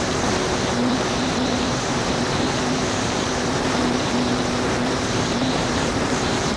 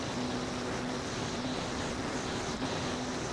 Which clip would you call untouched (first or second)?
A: second